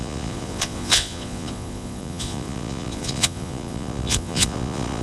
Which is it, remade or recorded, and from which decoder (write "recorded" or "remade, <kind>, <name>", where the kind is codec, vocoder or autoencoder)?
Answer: remade, vocoder, Vocos